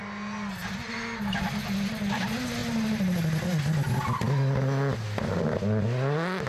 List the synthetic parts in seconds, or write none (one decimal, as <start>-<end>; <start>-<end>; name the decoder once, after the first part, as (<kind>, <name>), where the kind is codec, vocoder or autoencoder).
none